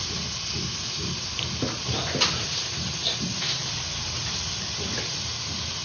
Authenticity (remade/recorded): recorded